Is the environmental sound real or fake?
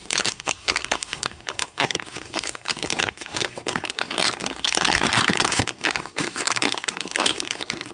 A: fake